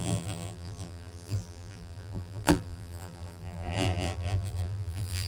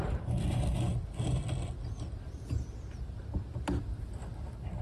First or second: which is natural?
second